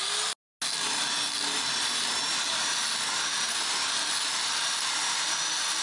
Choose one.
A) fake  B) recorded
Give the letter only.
B